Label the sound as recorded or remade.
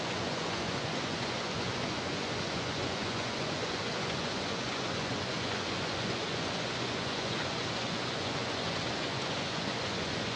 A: remade